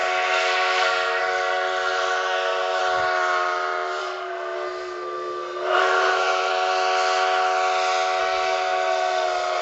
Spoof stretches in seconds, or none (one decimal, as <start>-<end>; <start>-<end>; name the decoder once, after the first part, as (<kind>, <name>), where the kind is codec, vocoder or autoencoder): 0.0-2.8 (codec, SNAC); 4.0-6.5; 8.2-9.6